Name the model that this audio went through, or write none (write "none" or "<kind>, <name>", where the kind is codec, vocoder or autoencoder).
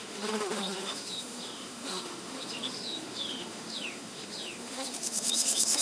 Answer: autoencoder, DAC-VAE